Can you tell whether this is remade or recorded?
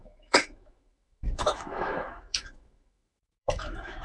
remade